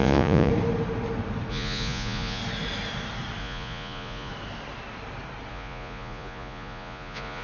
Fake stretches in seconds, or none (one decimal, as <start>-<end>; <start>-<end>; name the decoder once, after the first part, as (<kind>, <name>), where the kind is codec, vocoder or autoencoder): 0.0-0.5 (vocoder, Vocos); 1.5-2.4; 3.4-4.3; 5.5-7.4